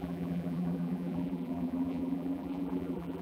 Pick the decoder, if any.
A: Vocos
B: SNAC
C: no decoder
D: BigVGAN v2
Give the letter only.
D